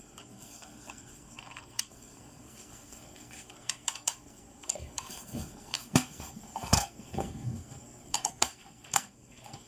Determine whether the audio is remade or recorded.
remade